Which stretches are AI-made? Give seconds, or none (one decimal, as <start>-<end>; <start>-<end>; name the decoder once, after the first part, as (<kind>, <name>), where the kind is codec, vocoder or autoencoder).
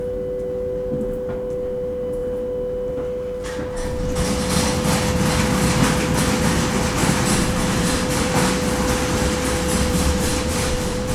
7.0-8.3 (vocoder, BigVGAN v2); 9.9-11.1